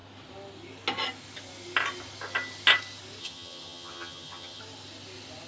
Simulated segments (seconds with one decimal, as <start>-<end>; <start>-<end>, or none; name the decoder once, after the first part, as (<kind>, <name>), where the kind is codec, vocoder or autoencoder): 3.2-4.6 (vocoder, HiFi-GAN)